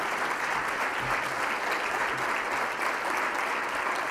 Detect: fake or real real